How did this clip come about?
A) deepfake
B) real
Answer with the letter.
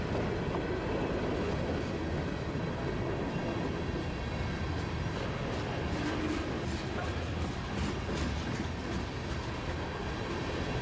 B